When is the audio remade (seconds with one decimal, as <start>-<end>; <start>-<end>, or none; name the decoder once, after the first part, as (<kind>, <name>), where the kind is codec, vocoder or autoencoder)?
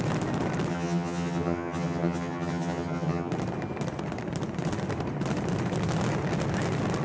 0.7-3.3 (vocoder, HiFi-GAN)